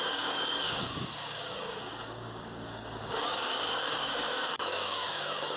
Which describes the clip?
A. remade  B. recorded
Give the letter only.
A